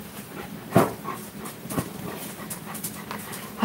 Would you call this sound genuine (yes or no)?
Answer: no